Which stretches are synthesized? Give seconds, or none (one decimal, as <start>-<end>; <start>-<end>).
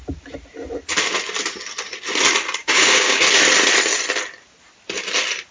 2.6-3.2